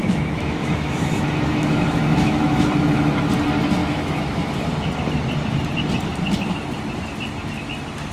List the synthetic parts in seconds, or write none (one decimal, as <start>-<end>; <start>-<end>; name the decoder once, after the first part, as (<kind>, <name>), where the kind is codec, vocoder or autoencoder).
0.0-3.3 (autoencoder, DAC-VAE); 3.8-4.5